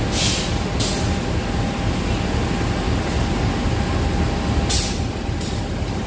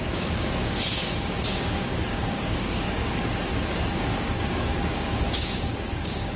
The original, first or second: first